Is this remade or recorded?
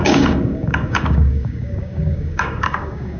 remade